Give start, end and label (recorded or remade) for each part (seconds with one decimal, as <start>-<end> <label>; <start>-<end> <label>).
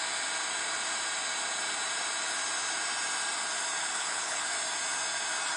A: 0.0-3.9 recorded; 3.9-4.4 remade; 4.4-5.6 recorded